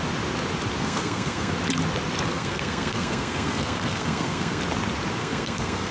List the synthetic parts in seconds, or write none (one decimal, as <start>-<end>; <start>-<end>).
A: 0.8-1.5; 2.3-4.6; 5.2-5.9